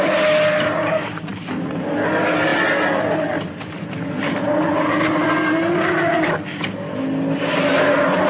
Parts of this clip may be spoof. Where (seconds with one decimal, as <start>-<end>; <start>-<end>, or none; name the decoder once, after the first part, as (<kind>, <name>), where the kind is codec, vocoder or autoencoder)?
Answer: none